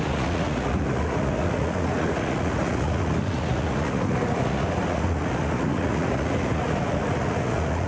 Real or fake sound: fake